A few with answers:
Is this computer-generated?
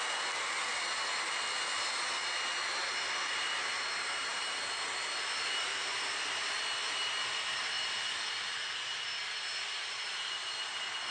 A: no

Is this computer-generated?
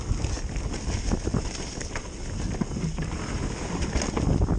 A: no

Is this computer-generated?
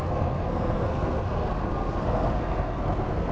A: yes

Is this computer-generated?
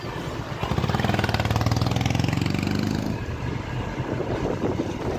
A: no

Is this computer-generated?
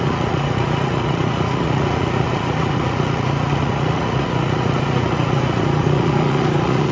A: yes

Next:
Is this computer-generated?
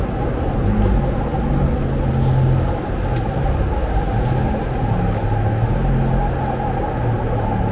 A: no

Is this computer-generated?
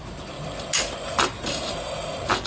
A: no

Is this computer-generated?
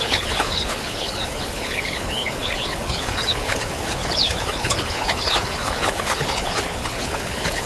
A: yes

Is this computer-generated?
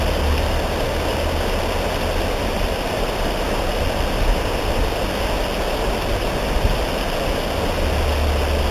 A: no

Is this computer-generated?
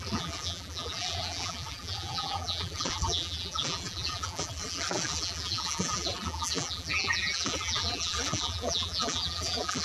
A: yes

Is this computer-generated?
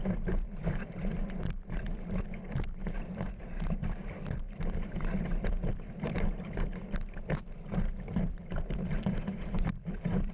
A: yes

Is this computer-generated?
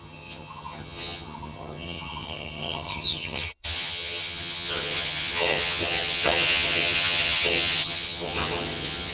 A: yes